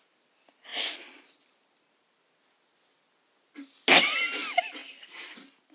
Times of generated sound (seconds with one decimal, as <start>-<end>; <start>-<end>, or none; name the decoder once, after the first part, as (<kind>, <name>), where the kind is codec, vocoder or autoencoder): none